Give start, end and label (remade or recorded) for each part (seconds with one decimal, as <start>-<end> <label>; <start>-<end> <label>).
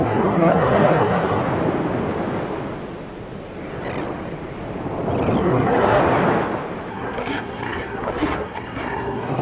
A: 0.0-1.4 remade; 1.4-5.4 recorded; 5.4-6.0 remade; 6.0-6.9 recorded; 6.9-9.4 remade